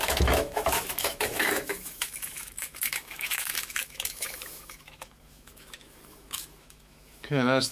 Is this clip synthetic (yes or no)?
yes